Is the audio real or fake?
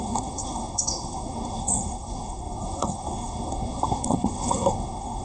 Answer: fake